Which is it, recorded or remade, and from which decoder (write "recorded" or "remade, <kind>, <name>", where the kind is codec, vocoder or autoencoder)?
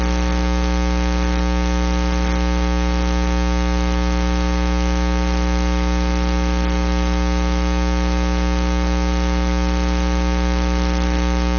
recorded